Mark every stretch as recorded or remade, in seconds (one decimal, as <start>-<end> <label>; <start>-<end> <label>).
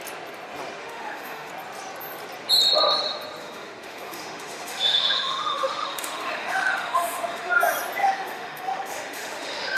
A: 0.0-0.8 recorded; 0.8-1.5 remade; 1.5-3.4 recorded; 3.4-7.5 remade; 7.5-8.0 recorded; 8.0-9.8 remade